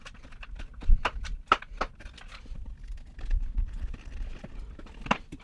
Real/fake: real